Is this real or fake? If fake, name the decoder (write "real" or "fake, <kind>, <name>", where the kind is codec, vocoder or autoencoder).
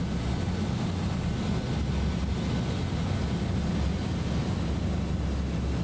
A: real